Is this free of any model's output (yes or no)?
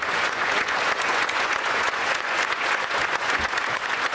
no